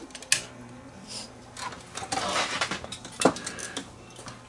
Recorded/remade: recorded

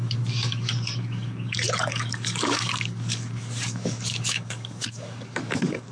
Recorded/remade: remade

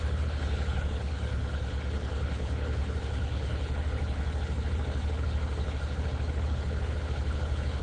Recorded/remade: remade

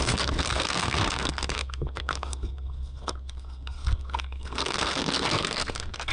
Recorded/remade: remade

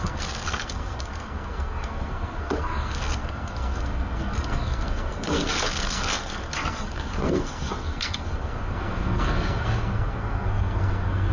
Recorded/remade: remade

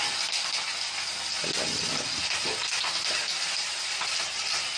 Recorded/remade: recorded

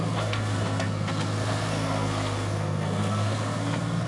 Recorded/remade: remade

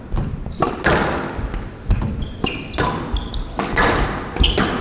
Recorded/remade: recorded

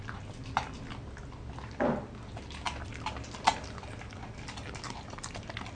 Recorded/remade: recorded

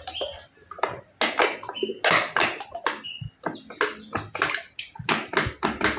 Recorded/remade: recorded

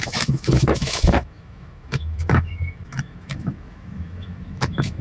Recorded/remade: remade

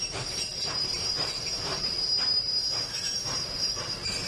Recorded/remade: remade